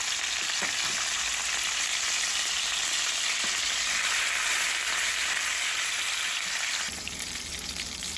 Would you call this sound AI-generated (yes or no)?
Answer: yes